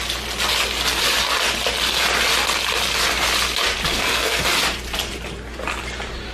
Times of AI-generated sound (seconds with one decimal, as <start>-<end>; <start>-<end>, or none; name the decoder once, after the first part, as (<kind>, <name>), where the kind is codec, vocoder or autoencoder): 3.9-4.4 (codec, SNAC)